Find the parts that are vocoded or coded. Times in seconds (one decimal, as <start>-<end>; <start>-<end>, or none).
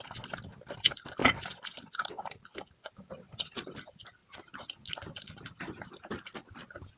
none